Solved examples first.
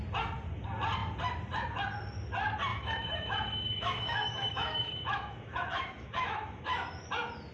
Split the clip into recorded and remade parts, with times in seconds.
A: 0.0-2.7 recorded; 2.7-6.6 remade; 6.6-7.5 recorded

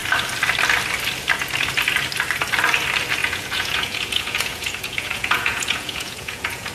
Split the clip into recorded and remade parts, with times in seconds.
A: 0.0-3.2 recorded; 3.2-6.7 remade

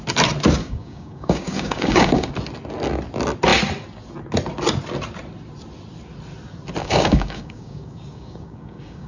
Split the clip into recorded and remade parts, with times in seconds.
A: 0.0-0.6 recorded; 0.6-2.3 remade; 2.3-6.8 recorded; 6.8-9.1 remade

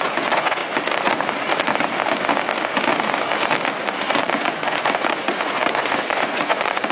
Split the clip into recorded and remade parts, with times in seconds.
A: 0.0-0.6 remade; 0.6-4.2 recorded; 4.2-6.9 remade

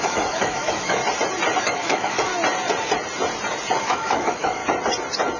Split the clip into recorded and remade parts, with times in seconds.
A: 0.0-1.0 remade; 1.0-1.6 recorded; 1.6-2.3 remade; 2.3-3.8 recorded; 3.8-4.6 remade; 4.6-5.4 recorded